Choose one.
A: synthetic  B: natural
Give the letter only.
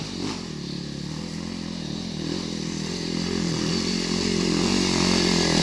B